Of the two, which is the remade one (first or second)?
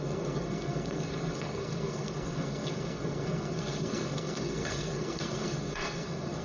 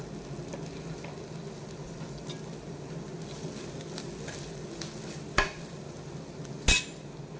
first